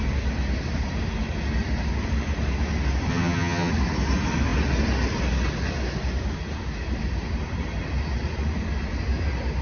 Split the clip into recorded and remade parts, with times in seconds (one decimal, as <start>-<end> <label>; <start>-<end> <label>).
0.0-3.1 recorded; 3.1-3.7 remade; 3.7-9.6 recorded